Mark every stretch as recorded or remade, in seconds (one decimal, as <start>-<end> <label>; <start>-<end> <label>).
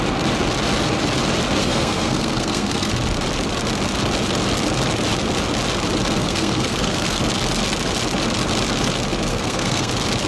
0.0-1.6 recorded; 1.6-2.9 remade; 2.9-6.2 recorded; 6.2-7.2 remade; 7.2-9.3 recorded; 9.3-9.9 remade; 9.9-10.3 recorded